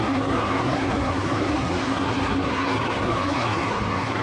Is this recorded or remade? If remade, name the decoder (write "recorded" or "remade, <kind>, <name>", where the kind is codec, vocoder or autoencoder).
remade, codec, SNAC